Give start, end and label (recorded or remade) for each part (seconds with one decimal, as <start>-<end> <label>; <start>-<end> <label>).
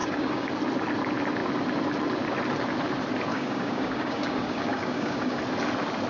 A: 0.0-0.5 remade; 0.5-3.3 recorded; 3.3-5.4 remade; 5.4-6.1 recorded